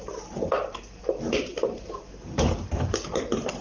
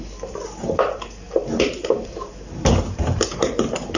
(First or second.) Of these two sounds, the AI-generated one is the first